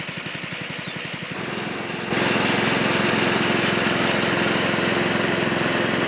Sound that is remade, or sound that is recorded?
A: recorded